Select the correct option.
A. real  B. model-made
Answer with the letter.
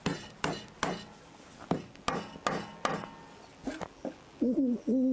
A